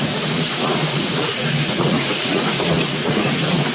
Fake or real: fake